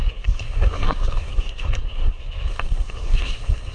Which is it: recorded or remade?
remade